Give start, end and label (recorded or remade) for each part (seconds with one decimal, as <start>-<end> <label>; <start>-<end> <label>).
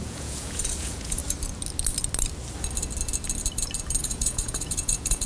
0.0-1.2 remade; 1.2-4.0 recorded; 4.0-5.3 remade